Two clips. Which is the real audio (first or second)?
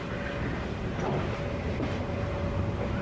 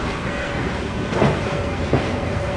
first